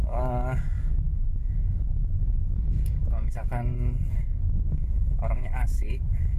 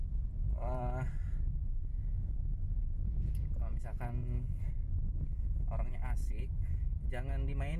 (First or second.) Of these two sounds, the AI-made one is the first